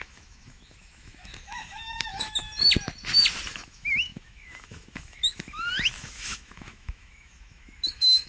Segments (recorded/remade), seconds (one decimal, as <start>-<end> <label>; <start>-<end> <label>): 0.0-2.4 remade; 2.4-3.5 recorded; 3.5-8.3 remade